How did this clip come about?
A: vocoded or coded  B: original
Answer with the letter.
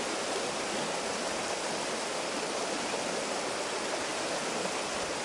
B